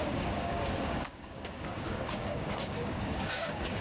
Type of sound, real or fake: fake